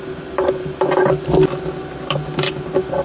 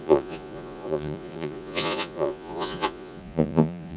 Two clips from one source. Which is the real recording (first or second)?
first